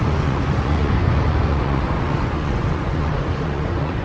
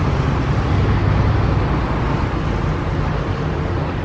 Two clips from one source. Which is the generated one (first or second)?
first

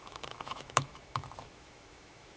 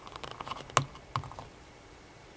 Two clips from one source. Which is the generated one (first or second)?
first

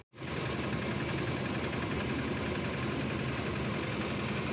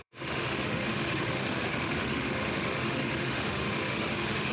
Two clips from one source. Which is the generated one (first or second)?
second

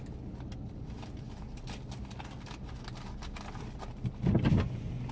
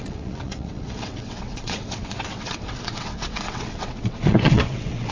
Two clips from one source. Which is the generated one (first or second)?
second